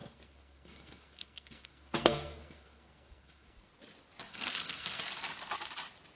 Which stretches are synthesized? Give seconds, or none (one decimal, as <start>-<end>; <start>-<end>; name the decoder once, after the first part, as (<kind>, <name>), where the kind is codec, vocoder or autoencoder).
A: 0.0-3.7 (codec, SNAC); 4.3-5.0